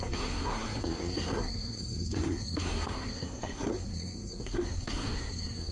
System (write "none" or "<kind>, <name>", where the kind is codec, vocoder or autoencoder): codec, SNAC